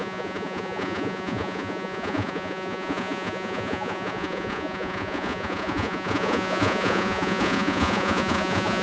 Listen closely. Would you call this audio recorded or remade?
remade